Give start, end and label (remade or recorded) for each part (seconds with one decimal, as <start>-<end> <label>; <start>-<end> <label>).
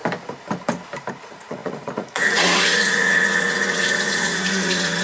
0.0-1.2 recorded; 1.2-5.0 remade